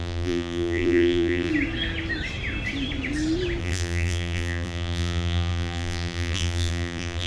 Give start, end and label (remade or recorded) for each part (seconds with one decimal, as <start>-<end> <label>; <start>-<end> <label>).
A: 0.0-1.5 remade; 1.5-3.6 recorded; 3.6-7.3 remade